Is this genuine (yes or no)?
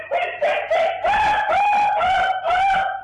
yes